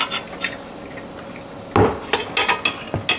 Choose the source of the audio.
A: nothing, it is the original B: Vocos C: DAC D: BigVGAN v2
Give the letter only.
A